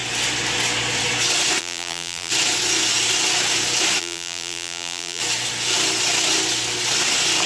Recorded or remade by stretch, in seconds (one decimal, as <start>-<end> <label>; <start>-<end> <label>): 0.0-1.6 recorded; 1.6-2.3 remade; 2.3-4.0 recorded; 4.0-5.2 remade; 5.2-7.5 recorded